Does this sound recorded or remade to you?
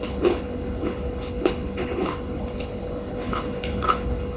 remade